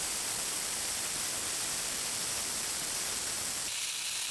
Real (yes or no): yes